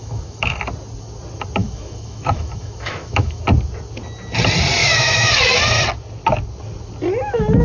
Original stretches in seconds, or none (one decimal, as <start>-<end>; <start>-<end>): 0.6-1.6; 3.4-4.8; 5.6-7.6

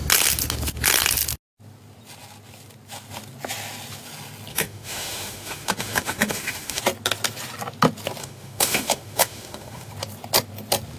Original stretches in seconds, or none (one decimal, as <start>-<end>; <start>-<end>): 0.0-4.5; 6.8-8.2; 9.9-11.0

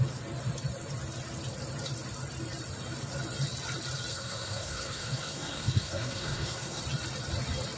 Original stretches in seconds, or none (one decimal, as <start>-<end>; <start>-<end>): 0.0-4.1; 6.8-7.8

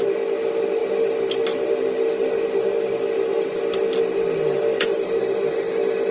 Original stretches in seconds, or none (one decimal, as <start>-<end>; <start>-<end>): 0.0-6.1

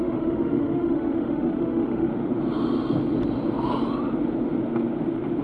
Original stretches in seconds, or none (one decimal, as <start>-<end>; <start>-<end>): 2.1-5.4

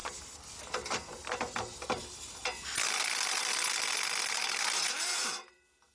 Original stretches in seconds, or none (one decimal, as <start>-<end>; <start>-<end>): 0.0-5.9